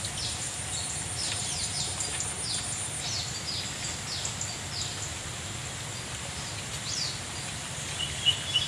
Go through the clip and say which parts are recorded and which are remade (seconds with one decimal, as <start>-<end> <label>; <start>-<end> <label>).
0.0-8.7 recorded